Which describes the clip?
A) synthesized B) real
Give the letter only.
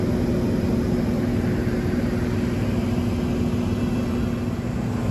B